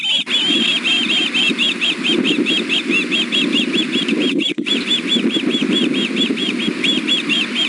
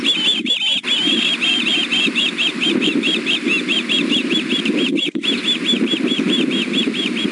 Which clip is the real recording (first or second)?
first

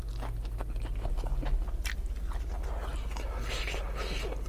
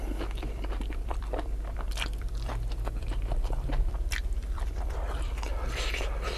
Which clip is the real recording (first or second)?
first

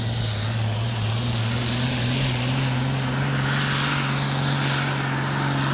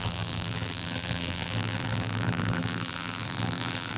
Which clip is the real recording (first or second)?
first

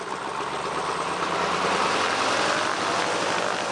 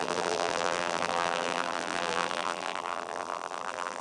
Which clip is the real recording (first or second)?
first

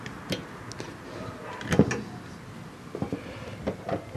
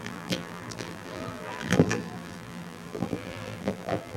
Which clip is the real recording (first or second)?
first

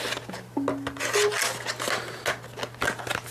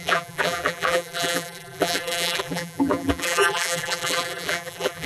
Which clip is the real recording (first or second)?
first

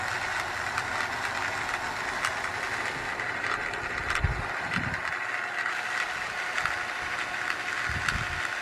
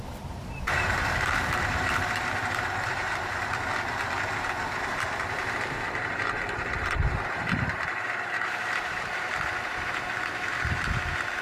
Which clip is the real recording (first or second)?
first